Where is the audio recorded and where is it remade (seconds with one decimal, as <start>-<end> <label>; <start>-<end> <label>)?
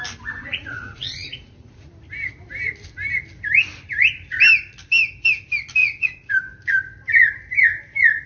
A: 0.0-0.4 recorded; 0.4-1.9 remade; 1.9-5.8 recorded; 5.8-6.3 remade; 6.3-8.3 recorded